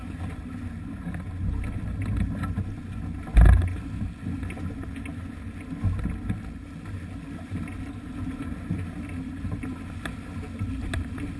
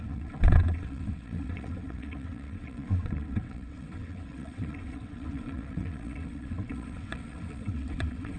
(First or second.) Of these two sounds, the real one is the first